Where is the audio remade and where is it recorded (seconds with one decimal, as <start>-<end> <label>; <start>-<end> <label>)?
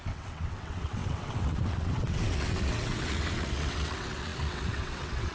0.0-5.3 remade